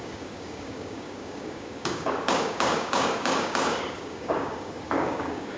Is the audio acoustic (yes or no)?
no